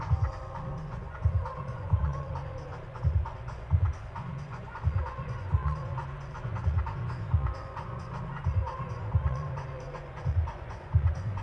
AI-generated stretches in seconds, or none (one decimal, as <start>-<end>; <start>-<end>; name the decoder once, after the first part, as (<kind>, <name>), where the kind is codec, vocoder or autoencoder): 0.0-11.4 (vocoder, Vocos)